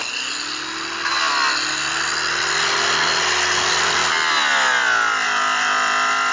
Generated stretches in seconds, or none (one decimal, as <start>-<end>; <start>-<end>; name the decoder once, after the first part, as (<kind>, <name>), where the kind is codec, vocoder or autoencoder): none